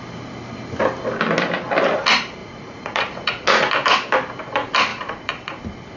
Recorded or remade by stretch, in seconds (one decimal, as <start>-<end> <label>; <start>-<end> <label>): 0.0-2.4 recorded; 2.4-3.7 remade; 3.7-4.9 recorded; 4.9-5.6 remade; 5.6-6.0 recorded